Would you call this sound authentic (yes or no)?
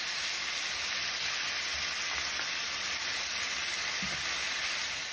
yes